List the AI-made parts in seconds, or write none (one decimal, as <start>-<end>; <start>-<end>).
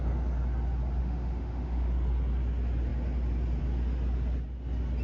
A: 1.0-1.9